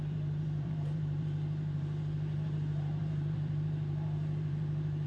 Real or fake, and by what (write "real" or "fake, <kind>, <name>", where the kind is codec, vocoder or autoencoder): fake, vocoder, BigVGAN v2